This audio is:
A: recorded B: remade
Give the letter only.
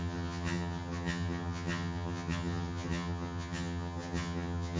B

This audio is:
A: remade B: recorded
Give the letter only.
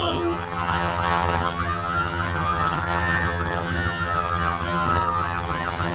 A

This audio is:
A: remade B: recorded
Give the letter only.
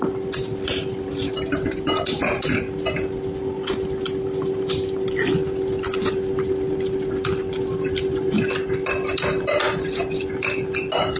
B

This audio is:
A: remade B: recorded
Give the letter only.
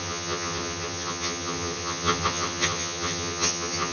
A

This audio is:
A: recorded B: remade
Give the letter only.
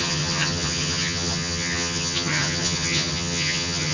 B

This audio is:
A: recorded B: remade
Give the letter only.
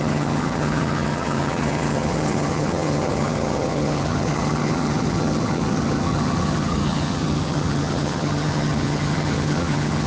B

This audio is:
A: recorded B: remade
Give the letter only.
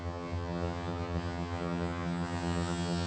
B